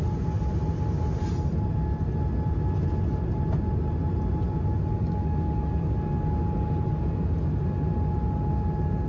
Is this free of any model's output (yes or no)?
yes